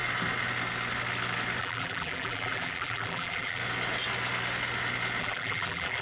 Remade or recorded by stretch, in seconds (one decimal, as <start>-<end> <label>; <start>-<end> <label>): 0.0-1.6 recorded; 1.6-3.6 remade; 3.6-5.2 recorded; 5.2-6.0 remade